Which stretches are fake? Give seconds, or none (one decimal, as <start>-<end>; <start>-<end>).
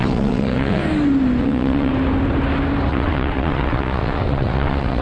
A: 0.0-0.8; 1.4-1.9; 2.9-5.0